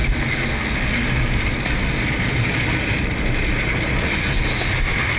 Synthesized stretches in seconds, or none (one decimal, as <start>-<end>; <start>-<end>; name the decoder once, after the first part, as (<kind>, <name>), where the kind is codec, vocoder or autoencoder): none